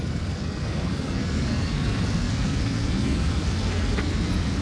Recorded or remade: remade